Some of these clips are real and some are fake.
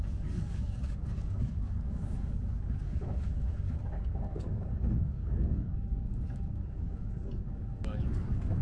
fake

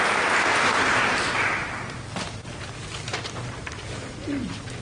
real